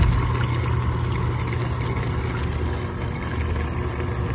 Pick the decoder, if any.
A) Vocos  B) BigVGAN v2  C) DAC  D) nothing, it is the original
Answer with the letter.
D